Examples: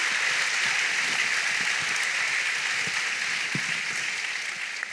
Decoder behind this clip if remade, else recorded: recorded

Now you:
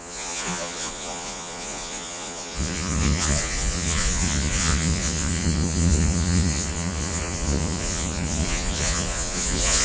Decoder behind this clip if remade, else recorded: remade, vocoder, Vocos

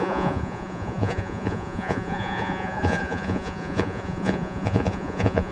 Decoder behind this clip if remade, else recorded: remade, vocoder, Vocos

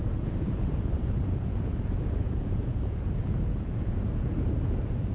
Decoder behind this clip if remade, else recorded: remade, vocoder, Vocos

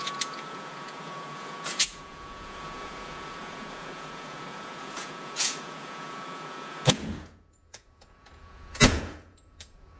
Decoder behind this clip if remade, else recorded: remade, vocoder, Vocos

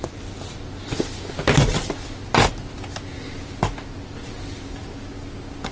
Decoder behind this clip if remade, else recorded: recorded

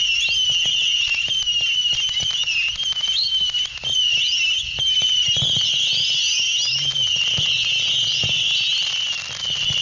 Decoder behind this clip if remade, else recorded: recorded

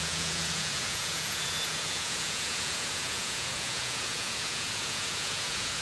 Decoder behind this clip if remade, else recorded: remade, vocoder, Vocos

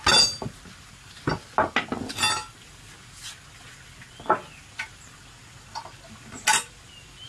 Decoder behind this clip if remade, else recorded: recorded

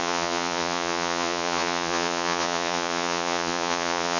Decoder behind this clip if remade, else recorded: remade, vocoder, Vocos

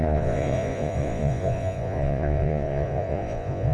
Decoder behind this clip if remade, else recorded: remade, vocoder, Vocos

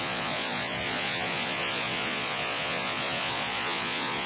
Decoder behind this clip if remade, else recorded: remade, vocoder, Vocos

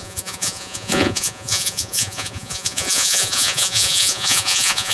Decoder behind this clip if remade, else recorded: remade, vocoder, Vocos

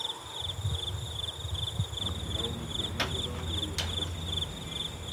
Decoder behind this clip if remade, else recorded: recorded